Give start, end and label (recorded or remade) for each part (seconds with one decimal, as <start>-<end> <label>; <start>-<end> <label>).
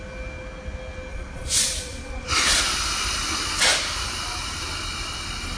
0.0-1.1 recorded; 1.1-2.6 remade; 2.6-5.6 recorded